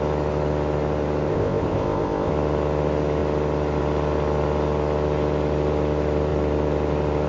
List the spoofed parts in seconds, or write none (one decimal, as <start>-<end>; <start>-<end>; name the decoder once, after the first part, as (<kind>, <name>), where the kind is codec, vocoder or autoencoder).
1.3-2.3 (codec, ZipCodec)